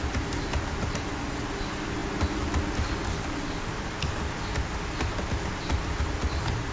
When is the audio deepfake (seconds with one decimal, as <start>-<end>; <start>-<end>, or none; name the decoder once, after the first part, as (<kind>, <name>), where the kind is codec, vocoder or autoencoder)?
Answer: none